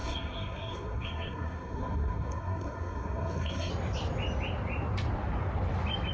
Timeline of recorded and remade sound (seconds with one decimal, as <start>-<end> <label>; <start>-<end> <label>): 0.0-3.7 remade; 3.7-6.1 recorded